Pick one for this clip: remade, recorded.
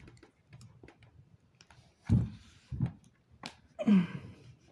remade